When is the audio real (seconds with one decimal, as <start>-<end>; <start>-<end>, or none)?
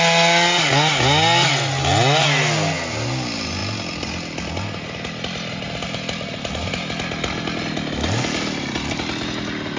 0.0-9.8